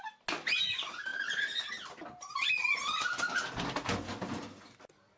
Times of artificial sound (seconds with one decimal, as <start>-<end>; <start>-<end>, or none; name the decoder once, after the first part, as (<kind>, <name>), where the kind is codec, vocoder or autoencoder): none